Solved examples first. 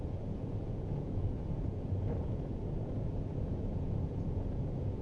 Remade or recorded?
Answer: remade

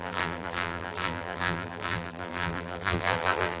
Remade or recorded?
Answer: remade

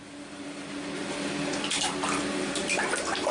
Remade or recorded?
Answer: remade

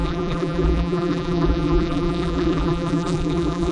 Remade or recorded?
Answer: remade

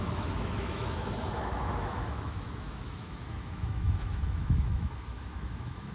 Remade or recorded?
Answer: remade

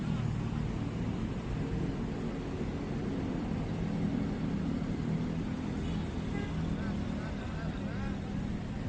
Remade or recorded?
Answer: recorded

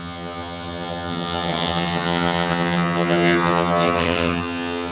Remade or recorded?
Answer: remade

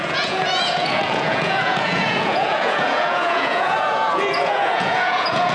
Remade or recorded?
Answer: remade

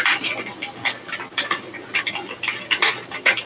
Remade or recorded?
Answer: recorded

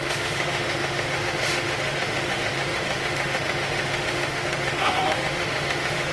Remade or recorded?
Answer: remade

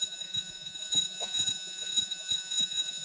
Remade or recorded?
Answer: remade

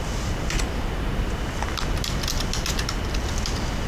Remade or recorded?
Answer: recorded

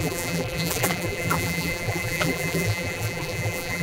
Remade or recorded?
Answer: remade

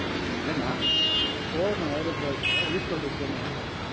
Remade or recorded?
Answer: recorded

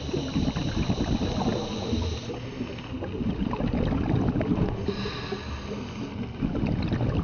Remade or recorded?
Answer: recorded